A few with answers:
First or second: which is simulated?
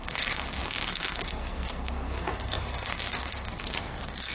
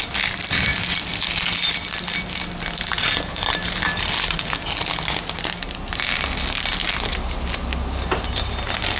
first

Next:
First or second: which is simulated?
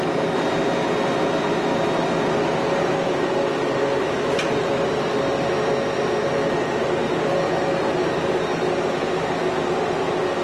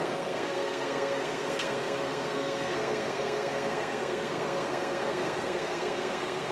second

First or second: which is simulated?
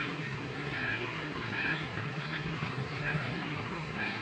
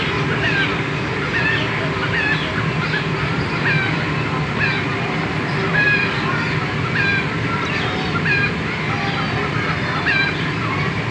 first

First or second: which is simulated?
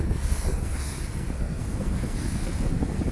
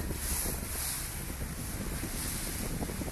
first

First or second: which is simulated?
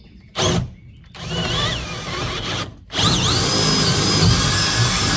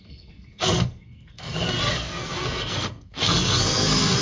second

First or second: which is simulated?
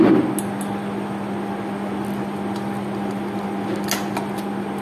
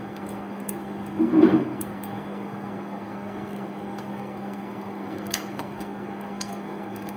second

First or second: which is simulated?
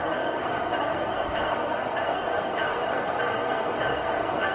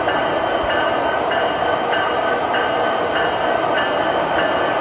first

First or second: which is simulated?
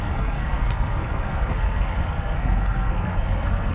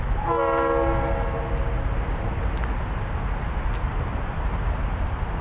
first